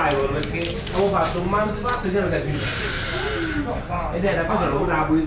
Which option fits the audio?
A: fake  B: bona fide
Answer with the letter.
B